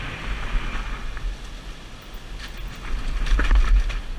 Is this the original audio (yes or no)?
yes